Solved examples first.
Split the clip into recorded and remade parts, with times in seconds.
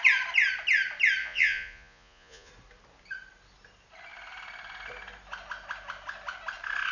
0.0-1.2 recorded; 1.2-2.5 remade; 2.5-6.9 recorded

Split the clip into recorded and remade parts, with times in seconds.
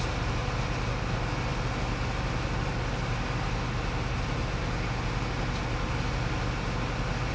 0.0-7.3 recorded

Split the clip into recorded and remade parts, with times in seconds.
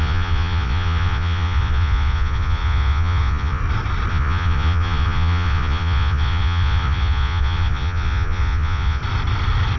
0.0-3.6 remade; 3.6-4.1 recorded; 4.1-9.0 remade; 9.0-9.8 recorded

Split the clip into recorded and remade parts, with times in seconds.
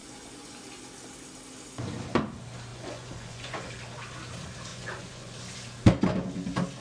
0.0-0.6 remade; 0.6-2.7 recorded; 2.7-3.7 remade; 3.7-4.7 recorded; 4.7-5.4 remade; 5.4-6.8 recorded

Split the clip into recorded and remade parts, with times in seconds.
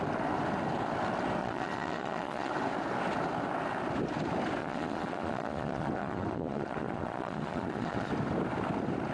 0.0-1.4 recorded; 1.4-2.5 remade; 2.5-4.6 recorded; 4.6-8.1 remade; 8.1-9.1 recorded